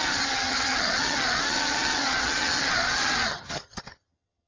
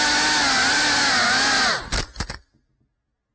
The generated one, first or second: first